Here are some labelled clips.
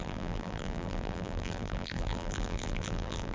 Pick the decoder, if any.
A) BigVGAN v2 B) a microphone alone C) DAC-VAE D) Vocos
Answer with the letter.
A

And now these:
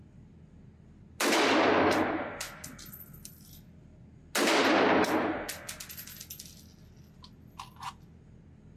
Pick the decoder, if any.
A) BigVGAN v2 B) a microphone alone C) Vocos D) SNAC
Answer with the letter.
B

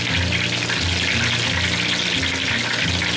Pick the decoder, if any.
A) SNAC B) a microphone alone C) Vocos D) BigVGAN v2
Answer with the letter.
B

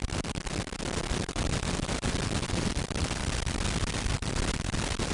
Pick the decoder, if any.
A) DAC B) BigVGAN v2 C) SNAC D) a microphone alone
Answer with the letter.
B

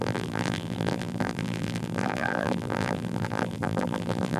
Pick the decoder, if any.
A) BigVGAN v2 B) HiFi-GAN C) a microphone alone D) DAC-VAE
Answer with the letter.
A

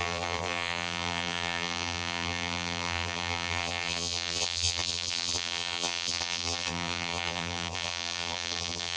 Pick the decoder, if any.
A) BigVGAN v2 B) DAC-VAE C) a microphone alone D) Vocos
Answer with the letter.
A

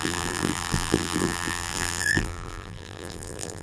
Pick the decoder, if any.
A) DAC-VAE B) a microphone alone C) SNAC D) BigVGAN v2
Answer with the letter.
D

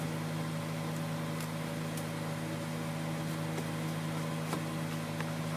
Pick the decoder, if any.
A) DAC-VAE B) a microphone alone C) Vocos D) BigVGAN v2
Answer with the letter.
B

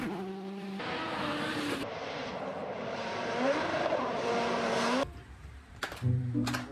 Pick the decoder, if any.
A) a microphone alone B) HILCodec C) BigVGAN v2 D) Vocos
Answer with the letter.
C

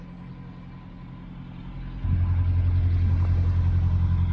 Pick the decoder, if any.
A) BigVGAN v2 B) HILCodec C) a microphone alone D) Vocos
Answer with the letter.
C